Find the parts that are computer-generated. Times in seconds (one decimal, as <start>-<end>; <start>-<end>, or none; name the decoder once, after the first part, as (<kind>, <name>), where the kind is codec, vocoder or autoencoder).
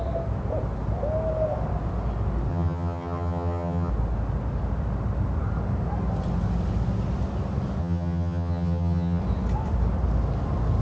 2.5-3.9 (vocoder, HiFi-GAN); 7.8-9.2